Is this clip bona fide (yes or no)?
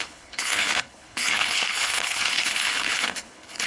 no